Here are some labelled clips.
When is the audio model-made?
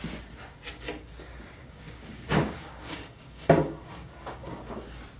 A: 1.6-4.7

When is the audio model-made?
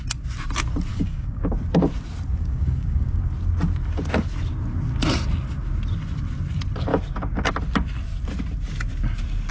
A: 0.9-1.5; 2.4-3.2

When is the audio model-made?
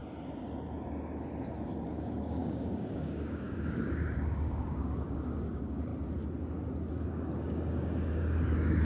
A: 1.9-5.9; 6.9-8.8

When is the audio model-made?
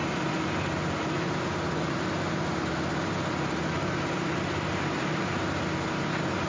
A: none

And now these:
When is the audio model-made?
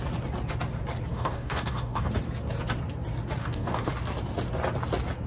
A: 1.1-2.1; 3.4-3.9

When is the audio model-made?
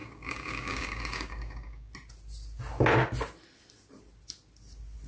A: 0.0-1.9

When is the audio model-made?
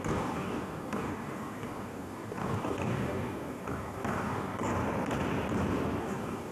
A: 0.0-4.7; 6.0-6.5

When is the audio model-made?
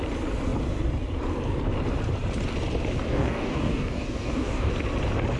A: 3.1-4.7